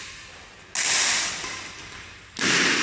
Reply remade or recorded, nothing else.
recorded